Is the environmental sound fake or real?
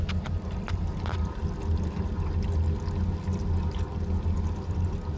real